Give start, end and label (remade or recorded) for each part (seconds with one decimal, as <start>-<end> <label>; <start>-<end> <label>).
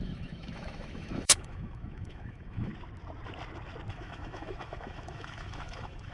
0.0-2.7 remade; 2.7-3.9 recorded; 3.9-6.1 remade